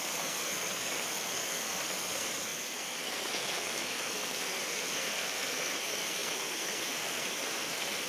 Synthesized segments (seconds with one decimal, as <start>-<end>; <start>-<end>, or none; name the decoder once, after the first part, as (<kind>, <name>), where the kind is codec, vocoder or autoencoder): 0.0-8.1 (codec, SNAC)